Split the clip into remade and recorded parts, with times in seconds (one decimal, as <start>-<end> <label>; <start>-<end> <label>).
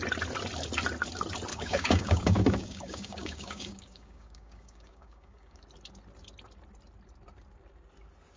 0.0-1.5 recorded; 1.5-5.6 remade; 5.6-8.4 recorded